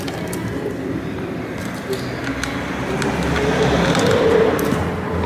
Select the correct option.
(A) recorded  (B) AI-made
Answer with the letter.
A